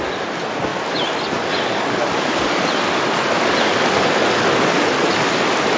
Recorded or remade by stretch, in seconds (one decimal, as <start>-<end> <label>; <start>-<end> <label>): 0.0-5.8 recorded